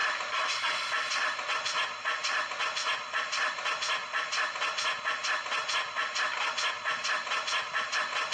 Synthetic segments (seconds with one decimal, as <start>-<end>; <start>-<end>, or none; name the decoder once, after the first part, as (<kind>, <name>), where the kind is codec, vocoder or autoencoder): none

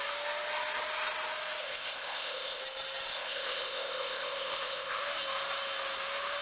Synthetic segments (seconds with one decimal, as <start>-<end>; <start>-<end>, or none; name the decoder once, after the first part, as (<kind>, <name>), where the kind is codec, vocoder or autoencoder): 1.6-2.6 (codec, ZipCodec); 3.1-5.0

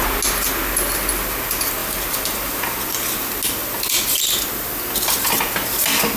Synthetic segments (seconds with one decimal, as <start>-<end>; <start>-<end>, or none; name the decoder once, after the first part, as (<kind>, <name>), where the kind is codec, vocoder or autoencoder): 1.8-2.8 (vocoder, BigVGAN v2)

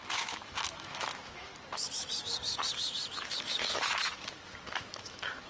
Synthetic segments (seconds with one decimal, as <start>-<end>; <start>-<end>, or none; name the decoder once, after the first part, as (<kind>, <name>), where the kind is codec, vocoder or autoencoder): 0.0-1.5 (autoencoder, DAC-VAE); 3.1-5.5

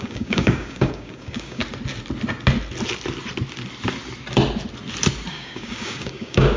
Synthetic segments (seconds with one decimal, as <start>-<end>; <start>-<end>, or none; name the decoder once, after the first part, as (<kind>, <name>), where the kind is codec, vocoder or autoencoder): 0.0-1.6 (codec, DAC); 5.3-6.6

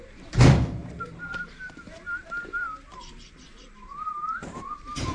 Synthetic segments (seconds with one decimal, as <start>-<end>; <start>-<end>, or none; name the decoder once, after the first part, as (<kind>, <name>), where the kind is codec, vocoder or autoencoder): 0.0-5.1 (vocoder, BigVGAN v2)

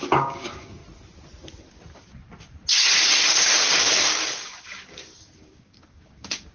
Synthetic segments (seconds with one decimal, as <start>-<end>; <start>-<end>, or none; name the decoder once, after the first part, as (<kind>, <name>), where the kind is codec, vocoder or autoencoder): 0.0-0.8 (codec, DAC); 3.3-6.5